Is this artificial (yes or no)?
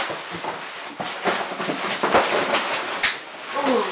no